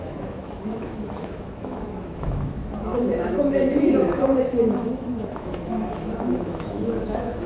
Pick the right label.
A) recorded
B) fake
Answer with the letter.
B